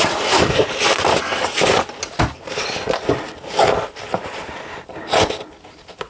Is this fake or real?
real